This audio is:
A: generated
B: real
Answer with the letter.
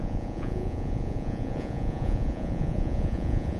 A